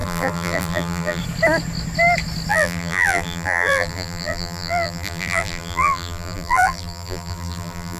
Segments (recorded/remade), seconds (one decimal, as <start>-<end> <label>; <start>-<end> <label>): 0.0-1.2 remade; 1.2-2.5 recorded; 2.5-8.0 remade